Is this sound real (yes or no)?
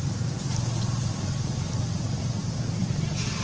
yes